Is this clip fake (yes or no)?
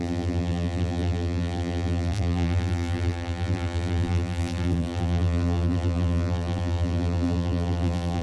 yes